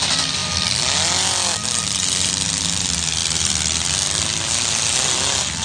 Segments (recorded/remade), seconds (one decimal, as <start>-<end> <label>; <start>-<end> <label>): 0.0-5.6 recorded